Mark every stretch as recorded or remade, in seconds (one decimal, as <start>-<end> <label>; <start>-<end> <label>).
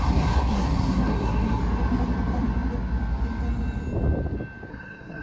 0.0-1.6 remade; 1.6-4.7 recorded; 4.7-5.2 remade